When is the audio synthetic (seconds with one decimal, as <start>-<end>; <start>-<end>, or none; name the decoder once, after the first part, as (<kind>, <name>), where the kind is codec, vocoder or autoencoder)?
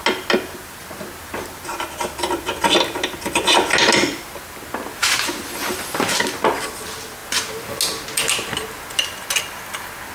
none